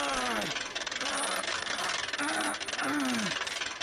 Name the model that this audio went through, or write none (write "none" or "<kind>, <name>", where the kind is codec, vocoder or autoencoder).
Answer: none